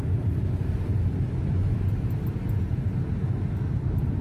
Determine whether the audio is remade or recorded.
recorded